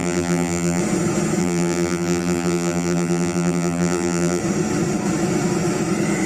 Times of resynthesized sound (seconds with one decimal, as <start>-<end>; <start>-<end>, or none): 0.0-0.8; 1.4-4.4